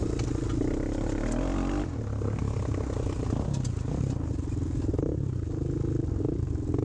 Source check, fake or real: real